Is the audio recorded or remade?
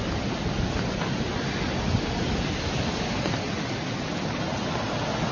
recorded